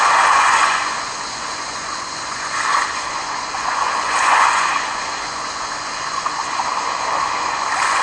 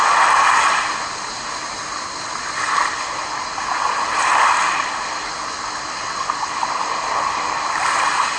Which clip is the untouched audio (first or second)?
second